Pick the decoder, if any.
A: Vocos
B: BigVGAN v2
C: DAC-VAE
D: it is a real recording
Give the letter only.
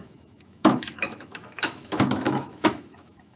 C